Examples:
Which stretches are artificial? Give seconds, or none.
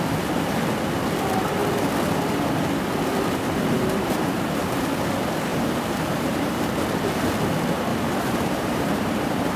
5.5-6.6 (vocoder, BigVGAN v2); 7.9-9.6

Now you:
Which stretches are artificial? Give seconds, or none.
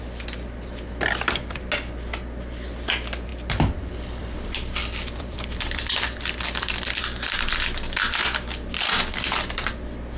3.3-7.0 (vocoder, BigVGAN v2); 9.1-9.7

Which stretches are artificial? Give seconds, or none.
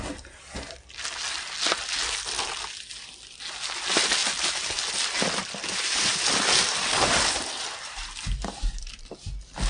4.2-9.1 (vocoder, BigVGAN v2)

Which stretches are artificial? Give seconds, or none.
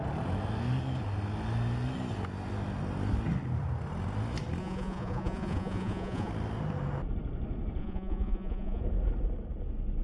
4.6-6.3 (vocoder, Vocos); 7.8-8.8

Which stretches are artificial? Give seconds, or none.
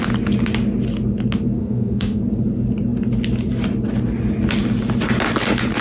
1.6-2.2 (autoencoder, DAC-VAE)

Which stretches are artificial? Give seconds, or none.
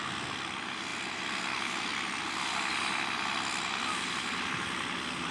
none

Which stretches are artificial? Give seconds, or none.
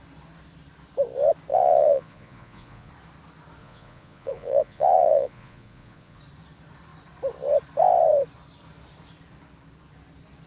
1.5-2.9 (vocoder, Vocos); 3.6-6.2